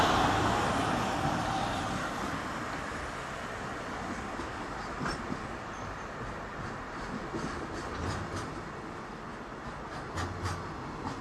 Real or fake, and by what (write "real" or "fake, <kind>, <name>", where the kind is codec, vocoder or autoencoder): real